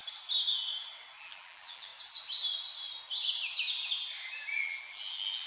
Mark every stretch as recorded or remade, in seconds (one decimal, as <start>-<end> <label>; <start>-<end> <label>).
0.0-1.2 recorded; 1.2-1.9 remade; 1.9-4.6 recorded; 4.6-5.5 remade